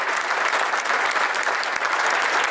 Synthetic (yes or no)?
no